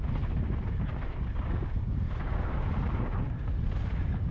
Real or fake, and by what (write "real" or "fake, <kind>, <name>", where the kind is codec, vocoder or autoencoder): real